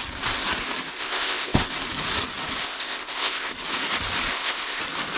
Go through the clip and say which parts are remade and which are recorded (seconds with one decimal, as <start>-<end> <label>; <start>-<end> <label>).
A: 0.0-0.9 recorded; 0.9-1.6 remade; 1.6-2.6 recorded; 2.6-3.5 remade; 3.5-4.3 recorded; 4.3-4.8 remade; 4.8-5.2 recorded